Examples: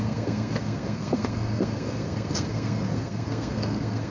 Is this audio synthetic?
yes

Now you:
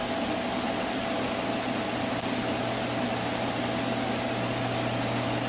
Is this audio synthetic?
no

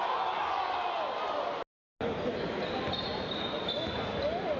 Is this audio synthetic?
no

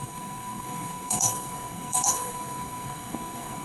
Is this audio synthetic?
yes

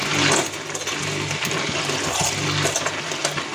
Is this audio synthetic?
no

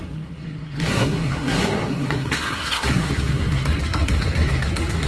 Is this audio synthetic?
yes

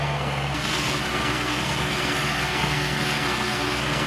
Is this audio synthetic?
yes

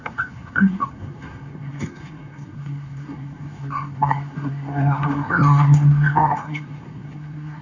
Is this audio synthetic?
yes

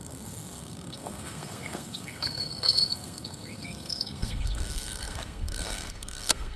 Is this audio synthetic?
yes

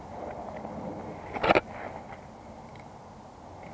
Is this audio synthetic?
no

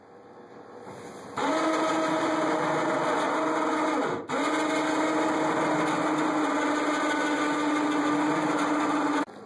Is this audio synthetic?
no